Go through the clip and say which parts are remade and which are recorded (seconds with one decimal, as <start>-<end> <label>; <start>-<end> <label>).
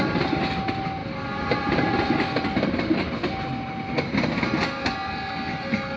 0.0-6.0 recorded